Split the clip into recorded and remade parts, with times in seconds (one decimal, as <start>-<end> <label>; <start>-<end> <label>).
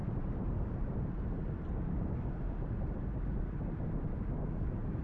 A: 0.0-5.0 remade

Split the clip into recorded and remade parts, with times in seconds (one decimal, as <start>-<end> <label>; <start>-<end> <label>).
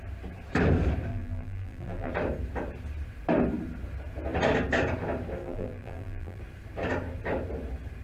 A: 0.0-1.1 recorded; 1.1-2.1 remade; 2.1-5.4 recorded; 5.4-6.4 remade; 6.4-8.0 recorded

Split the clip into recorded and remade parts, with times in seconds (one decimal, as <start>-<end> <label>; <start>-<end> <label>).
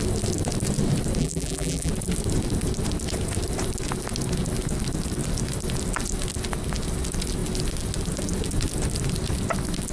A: 0.0-1.2 recorded; 1.2-1.9 remade; 1.9-9.9 recorded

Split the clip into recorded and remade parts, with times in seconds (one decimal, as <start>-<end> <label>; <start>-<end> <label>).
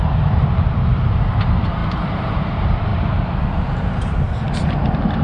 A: 0.0-5.2 remade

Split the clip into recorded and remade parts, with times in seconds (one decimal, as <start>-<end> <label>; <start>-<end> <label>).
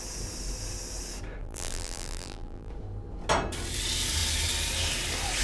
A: 0.0-1.4 recorded; 1.4-2.7 remade; 2.7-5.4 recorded